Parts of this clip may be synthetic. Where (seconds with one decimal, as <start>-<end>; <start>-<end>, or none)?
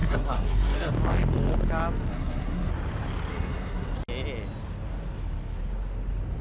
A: 0.0-0.9; 2.1-2.7; 3.3-4.0